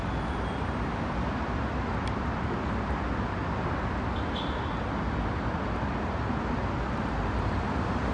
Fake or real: real